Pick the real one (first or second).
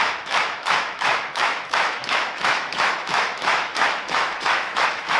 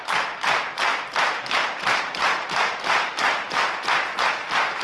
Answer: second